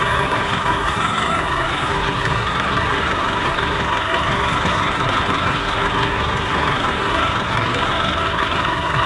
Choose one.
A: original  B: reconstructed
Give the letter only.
B